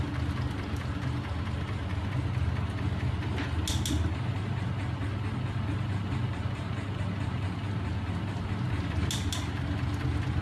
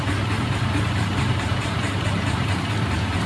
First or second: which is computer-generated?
second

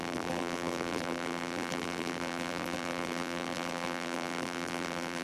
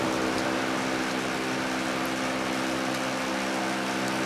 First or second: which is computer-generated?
first